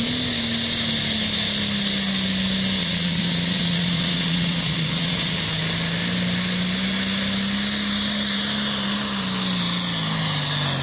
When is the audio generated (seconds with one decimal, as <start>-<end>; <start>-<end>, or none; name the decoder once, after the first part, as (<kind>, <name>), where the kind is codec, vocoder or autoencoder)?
2.8-5.4 (vocoder, Vocos)